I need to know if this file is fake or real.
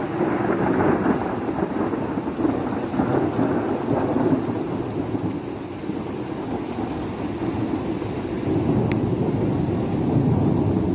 real